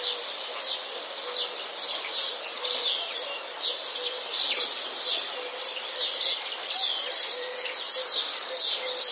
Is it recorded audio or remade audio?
remade